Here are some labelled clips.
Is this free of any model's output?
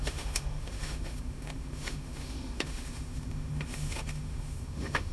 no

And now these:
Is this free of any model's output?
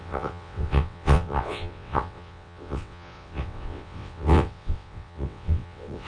no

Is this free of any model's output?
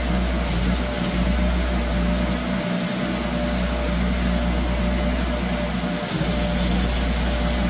yes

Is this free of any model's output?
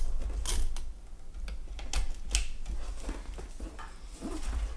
yes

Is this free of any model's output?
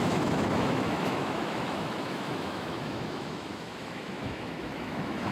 no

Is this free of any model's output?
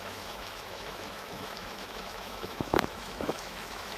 no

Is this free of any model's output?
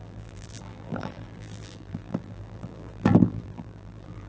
no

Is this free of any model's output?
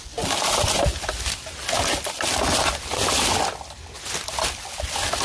yes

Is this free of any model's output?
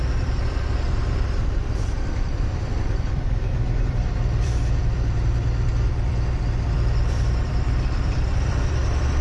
no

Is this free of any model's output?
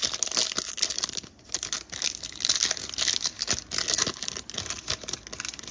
yes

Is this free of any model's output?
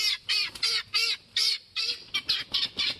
yes